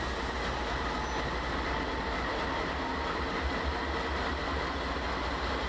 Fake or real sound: real